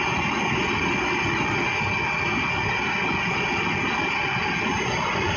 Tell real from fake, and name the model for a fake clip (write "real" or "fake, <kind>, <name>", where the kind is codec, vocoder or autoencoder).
real